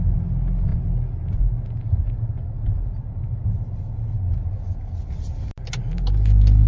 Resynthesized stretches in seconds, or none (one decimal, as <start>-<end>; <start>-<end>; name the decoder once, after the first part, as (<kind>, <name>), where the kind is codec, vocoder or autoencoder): none